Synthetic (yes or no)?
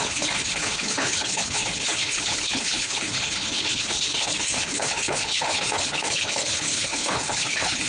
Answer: yes